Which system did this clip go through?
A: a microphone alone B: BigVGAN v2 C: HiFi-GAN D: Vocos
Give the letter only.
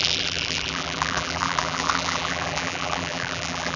B